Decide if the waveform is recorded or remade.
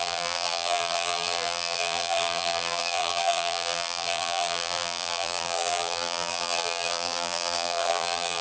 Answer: remade